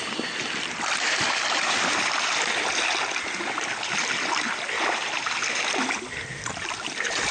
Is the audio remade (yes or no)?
no